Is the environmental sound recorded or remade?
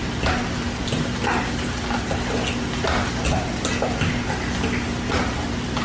recorded